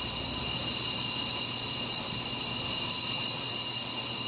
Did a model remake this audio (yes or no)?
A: no